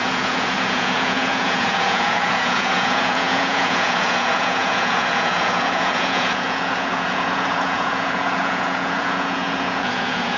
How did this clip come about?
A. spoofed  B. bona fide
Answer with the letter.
A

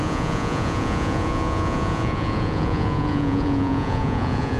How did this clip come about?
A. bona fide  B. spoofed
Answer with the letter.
B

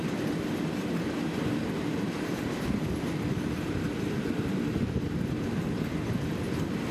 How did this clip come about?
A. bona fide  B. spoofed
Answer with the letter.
A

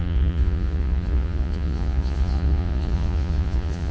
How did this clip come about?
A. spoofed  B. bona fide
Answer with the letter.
A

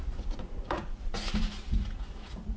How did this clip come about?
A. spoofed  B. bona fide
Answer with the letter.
A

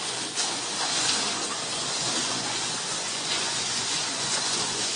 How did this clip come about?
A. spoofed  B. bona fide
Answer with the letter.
A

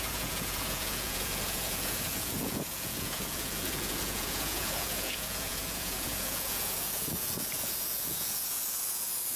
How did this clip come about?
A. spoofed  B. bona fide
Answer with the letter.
A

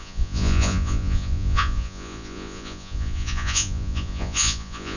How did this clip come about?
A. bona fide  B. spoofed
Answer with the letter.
B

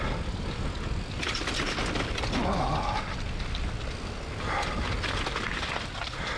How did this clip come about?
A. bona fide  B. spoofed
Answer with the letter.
A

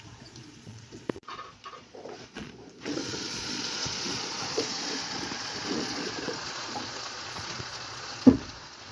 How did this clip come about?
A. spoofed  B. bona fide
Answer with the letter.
A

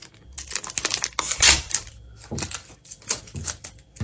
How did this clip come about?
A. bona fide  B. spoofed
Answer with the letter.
A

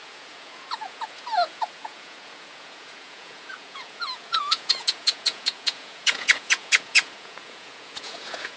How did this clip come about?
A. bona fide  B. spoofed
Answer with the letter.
B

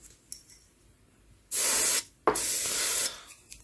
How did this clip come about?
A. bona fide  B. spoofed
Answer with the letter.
A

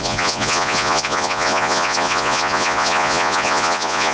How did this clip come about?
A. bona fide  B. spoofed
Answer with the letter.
B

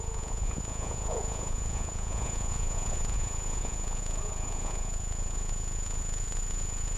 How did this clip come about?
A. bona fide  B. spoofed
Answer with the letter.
B